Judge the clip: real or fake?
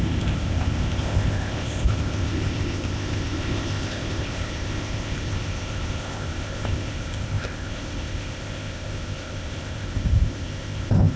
fake